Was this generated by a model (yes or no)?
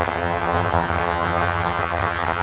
yes